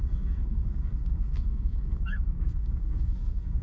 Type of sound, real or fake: fake